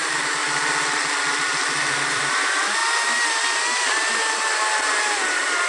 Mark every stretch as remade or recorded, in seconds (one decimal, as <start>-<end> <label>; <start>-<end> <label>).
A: 0.0-0.4 remade; 0.4-2.1 recorded; 2.1-2.8 remade; 2.8-4.4 recorded; 4.4-5.7 remade